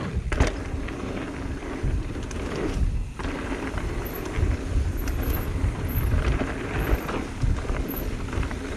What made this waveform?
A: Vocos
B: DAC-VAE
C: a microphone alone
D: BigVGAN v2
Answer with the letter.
C